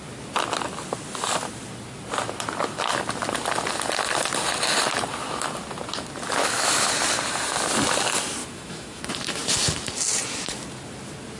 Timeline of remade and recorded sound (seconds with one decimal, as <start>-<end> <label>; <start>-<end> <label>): 0.0-6.4 recorded; 6.4-6.9 remade; 6.9-8.4 recorded; 8.4-9.0 remade; 9.0-11.4 recorded